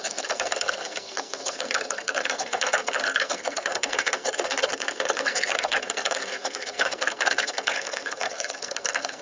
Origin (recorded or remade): remade